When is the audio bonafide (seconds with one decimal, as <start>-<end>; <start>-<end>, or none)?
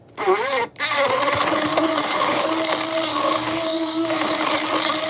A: 0.0-1.7; 2.5-3.1; 4.4-5.1